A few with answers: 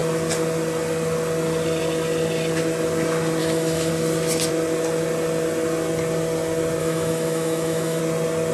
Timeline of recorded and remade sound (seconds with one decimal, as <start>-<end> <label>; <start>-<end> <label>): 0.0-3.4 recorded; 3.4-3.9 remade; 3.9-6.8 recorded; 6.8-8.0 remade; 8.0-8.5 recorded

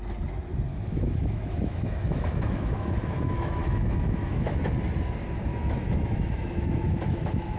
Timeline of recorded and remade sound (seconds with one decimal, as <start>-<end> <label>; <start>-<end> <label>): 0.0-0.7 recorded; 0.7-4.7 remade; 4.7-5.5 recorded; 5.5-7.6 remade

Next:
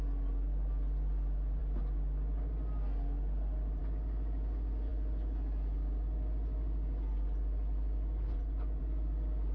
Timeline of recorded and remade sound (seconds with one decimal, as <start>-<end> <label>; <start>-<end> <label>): 0.0-9.5 recorded

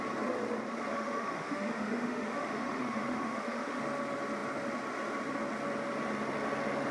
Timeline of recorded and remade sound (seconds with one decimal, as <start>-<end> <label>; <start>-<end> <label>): 0.0-0.9 recorded; 0.9-3.8 remade; 3.8-6.9 recorded